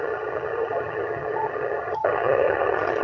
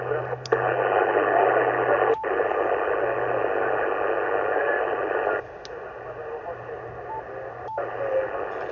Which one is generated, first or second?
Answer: first